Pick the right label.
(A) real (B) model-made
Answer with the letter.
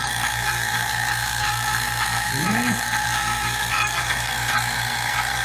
B